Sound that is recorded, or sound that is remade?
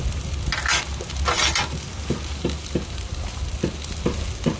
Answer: recorded